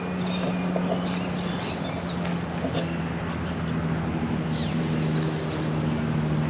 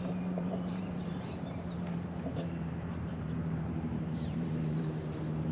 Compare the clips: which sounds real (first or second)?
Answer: first